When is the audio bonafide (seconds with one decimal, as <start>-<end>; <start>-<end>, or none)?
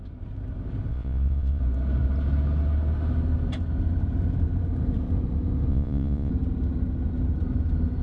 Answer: 0.0-0.9; 1.6-5.7; 6.3-8.0